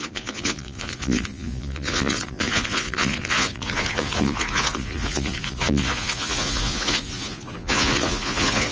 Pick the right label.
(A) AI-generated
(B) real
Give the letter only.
A